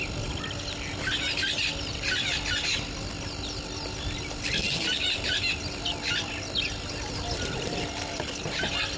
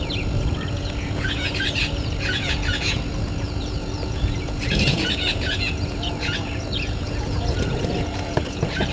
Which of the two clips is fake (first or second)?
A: second